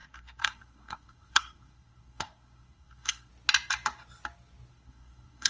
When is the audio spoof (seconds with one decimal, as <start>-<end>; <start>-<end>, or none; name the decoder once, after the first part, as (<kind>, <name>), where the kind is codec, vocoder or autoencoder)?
0.0-3.3 (codec, SNAC); 4.7-5.5